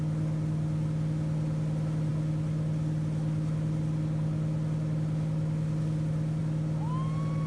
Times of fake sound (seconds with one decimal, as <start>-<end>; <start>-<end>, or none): none